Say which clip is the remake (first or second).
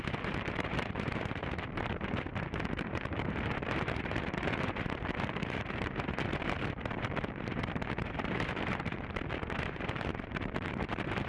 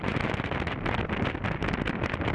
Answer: first